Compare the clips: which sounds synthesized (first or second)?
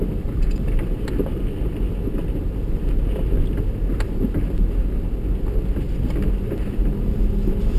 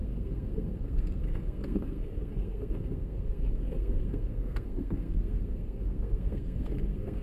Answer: second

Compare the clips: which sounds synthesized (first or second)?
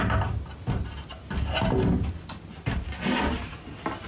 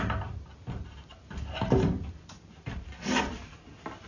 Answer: second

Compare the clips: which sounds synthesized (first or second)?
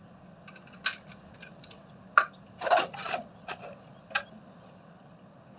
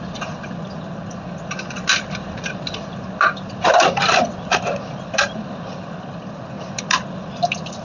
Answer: second